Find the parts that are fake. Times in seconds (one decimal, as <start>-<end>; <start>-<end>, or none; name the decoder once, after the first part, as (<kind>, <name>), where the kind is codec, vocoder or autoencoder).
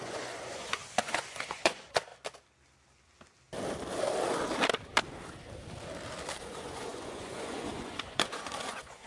0.0-2.1 (vocoder, Vocos); 6.4-9.1